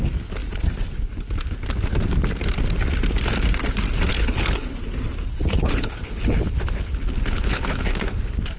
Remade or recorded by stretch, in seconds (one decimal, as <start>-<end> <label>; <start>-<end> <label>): 0.0-4.1 recorded; 4.1-4.8 remade; 4.8-5.2 recorded; 5.2-8.2 remade; 8.2-8.6 recorded